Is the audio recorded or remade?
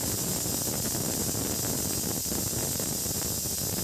recorded